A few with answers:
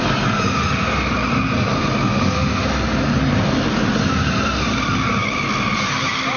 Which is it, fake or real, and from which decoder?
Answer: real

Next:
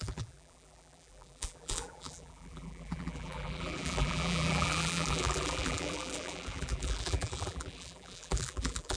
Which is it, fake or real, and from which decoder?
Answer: fake, vocoder, BigVGAN v2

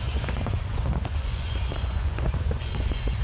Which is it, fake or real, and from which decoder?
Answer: fake, vocoder, Vocos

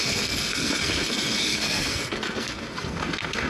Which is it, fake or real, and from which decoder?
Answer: fake, codec, SNAC